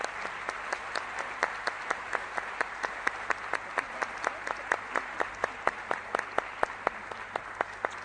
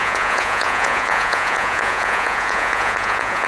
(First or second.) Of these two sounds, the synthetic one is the second